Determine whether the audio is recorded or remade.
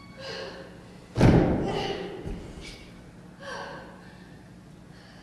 recorded